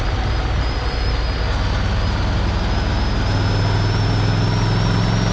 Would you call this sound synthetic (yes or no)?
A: no